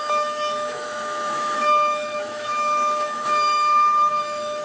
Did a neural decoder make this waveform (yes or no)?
yes